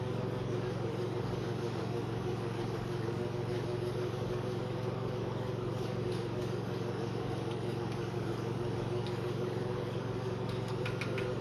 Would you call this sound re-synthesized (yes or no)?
yes